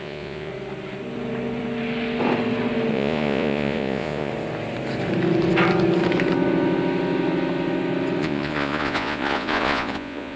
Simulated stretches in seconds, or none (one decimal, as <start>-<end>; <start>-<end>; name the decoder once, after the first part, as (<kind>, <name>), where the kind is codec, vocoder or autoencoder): 0.0-0.5 (vocoder, Vocos); 2.9-4.3; 8.2-10.4